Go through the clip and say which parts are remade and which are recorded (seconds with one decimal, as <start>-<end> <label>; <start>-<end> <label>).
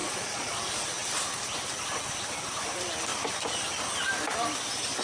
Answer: 0.0-0.6 remade; 0.6-5.0 recorded